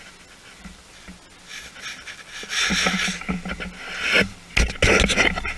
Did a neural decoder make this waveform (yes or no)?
no